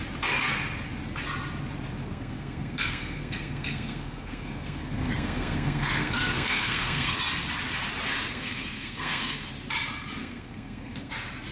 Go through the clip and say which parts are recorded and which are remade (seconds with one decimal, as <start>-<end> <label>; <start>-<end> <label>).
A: 0.0-2.0 recorded; 2.0-7.2 remade; 7.2-8.3 recorded; 8.3-9.5 remade; 9.5-10.2 recorded; 10.2-11.1 remade; 11.1-11.5 recorded